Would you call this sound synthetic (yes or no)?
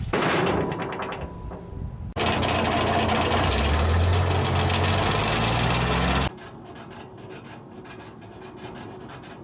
no